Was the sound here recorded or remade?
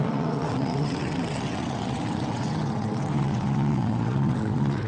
remade